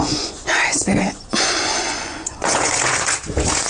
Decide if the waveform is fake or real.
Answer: fake